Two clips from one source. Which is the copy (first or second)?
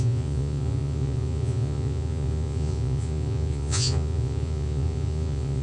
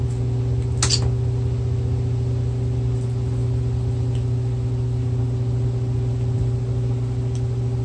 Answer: first